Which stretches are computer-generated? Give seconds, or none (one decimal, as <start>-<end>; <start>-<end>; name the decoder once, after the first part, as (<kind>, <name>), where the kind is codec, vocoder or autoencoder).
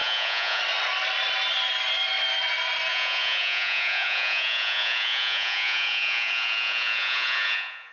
0.0-0.6 (vocoder, Vocos); 2.9-7.9